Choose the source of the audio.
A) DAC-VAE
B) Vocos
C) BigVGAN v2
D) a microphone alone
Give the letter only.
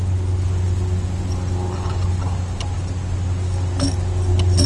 D